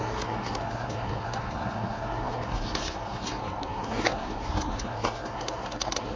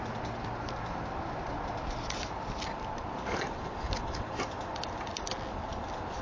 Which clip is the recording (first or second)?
second